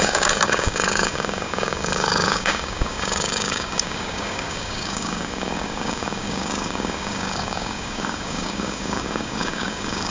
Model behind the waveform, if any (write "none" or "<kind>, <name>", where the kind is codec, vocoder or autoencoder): codec, DAC